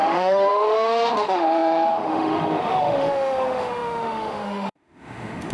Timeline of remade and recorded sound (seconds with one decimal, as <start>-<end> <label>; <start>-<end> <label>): 0.0-5.5 remade